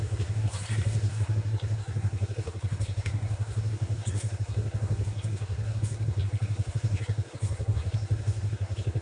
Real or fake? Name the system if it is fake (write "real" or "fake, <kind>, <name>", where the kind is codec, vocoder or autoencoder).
fake, codec, SNAC